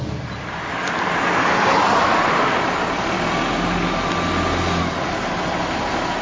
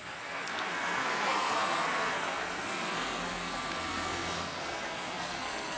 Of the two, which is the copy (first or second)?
second